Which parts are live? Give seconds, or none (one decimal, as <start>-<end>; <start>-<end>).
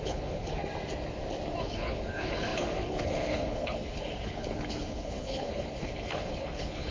0.6-1.6